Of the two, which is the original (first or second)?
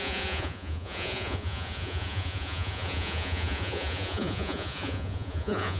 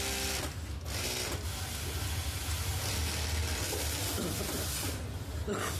second